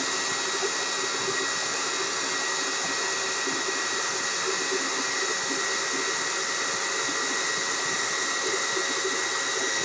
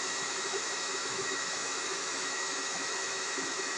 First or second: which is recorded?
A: first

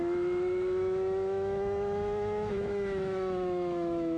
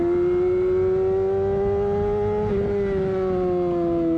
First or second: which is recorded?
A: second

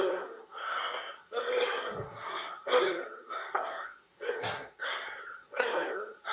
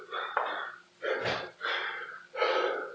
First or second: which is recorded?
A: second